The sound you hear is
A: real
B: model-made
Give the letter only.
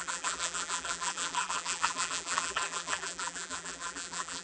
B